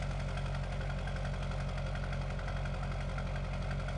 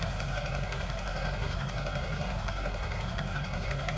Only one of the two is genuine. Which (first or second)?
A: first